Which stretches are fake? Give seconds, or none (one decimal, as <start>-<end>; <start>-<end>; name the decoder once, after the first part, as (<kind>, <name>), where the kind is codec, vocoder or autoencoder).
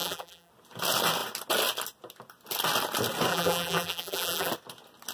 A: 0.0-0.5 (vocoder, BigVGAN v2); 3.3-4.5